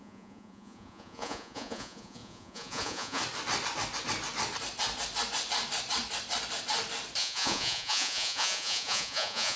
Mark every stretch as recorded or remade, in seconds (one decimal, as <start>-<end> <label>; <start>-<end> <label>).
0.0-3.2 remade; 3.2-7.2 recorded; 7.2-9.6 remade